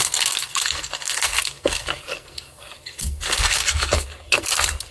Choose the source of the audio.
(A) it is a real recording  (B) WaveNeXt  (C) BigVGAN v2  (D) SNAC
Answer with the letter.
D